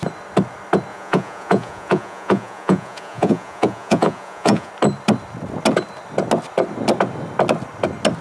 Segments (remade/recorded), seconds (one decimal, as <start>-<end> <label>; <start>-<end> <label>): 0.0-0.9 recorded; 0.9-4.7 remade; 4.7-8.2 recorded